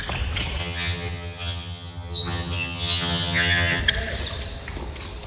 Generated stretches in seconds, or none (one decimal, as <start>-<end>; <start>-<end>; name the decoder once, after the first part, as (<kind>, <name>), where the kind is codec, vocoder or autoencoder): 0.6-3.8 (vocoder, HiFi-GAN)